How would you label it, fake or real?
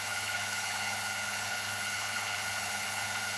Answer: fake